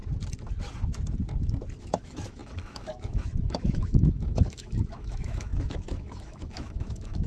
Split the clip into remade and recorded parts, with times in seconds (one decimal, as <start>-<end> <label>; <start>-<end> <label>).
0.0-1.8 recorded; 1.8-7.3 remade